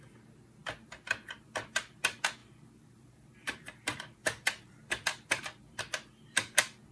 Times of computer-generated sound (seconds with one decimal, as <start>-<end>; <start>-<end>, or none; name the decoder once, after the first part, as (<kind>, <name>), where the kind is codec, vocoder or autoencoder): 2.4-5.8 (vocoder, BigVGAN v2)